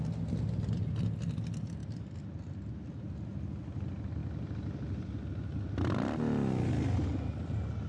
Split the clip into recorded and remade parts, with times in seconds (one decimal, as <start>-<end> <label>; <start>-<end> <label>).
0.0-7.9 recorded